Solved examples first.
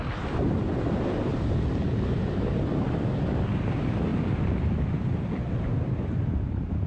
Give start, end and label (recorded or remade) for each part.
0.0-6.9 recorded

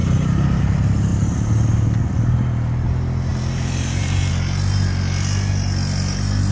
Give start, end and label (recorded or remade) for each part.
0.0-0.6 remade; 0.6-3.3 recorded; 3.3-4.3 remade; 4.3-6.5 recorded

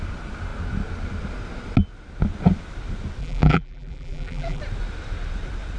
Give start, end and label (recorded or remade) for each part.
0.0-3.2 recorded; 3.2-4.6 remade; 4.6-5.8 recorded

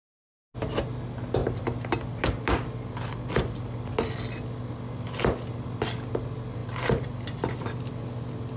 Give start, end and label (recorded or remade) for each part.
0.0-8.6 recorded

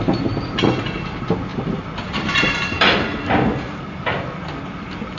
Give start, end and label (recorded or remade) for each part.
0.0-5.2 recorded